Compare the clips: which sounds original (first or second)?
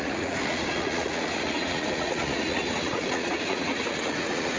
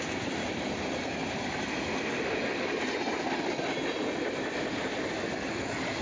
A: second